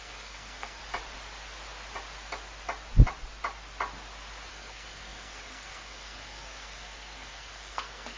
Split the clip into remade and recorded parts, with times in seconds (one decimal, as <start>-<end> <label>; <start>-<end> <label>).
0.0-0.8 remade; 0.8-4.5 recorded; 4.5-8.2 remade